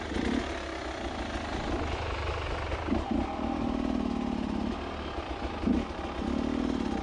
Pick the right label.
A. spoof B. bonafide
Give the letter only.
B